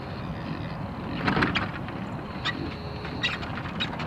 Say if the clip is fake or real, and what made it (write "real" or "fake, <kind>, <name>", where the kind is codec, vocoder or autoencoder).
real